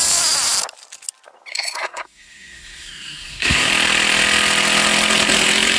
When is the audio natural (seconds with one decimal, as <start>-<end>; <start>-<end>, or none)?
0.0-1.5; 3.7-5.8